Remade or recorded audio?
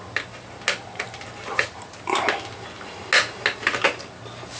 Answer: recorded